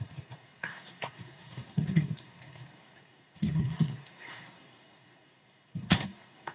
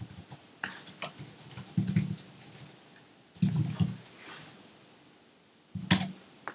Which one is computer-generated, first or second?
first